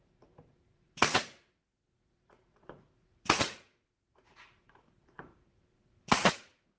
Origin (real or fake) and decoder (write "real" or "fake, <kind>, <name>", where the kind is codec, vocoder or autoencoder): fake, vocoder, Vocos